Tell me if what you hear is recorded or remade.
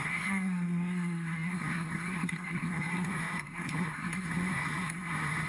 remade